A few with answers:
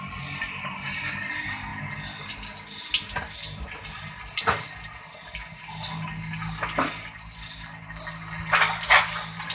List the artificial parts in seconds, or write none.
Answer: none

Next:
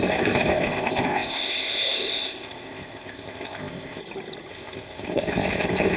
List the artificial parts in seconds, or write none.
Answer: 0.0-4.0 (codec, ZipCodec); 4.5-6.0

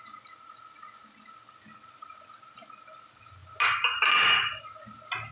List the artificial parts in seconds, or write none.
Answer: none

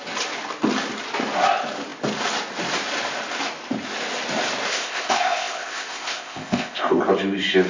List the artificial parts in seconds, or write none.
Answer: 4.7-7.0 (codec, ZipCodec)

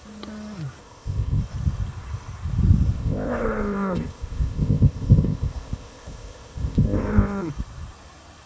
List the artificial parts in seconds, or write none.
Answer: 0.8-1.4 (codec, ZipCodec); 3.0-7.5

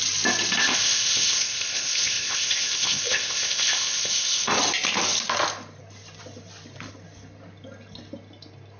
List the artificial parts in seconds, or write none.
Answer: 0.6-4.5 (codec, ZipCodec)

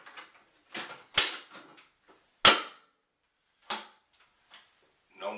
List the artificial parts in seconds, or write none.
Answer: none